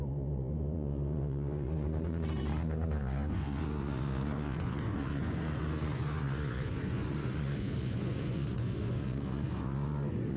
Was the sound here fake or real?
fake